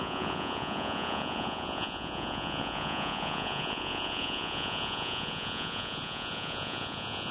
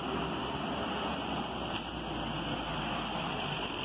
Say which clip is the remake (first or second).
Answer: first